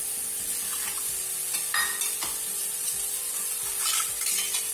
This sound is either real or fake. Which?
real